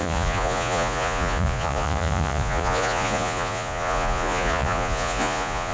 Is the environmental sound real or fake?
fake